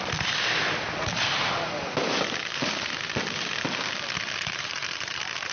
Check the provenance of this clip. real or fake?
real